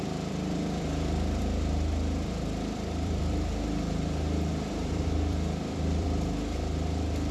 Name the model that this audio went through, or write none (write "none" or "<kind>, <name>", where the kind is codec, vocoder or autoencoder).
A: vocoder, BigVGAN v2